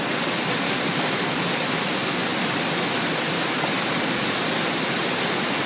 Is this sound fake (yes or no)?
no